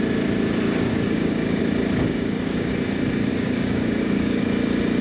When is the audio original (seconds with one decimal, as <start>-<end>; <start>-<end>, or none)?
0.0-0.9; 1.6-2.1; 2.7-3.3; 4.4-5.0